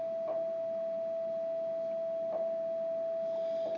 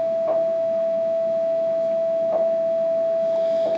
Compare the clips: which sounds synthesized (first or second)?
second